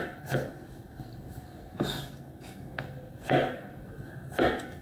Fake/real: fake